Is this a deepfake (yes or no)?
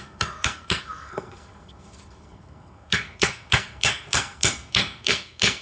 yes